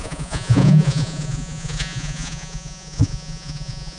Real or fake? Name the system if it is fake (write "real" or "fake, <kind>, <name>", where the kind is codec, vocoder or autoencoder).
fake, vocoder, Vocos